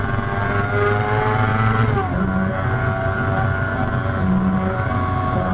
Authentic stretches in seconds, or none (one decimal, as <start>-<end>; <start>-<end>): 0.0-5.5